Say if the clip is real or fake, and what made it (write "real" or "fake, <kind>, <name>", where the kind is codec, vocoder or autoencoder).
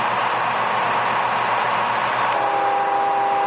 real